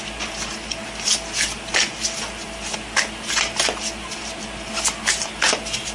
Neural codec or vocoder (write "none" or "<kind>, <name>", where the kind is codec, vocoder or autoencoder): none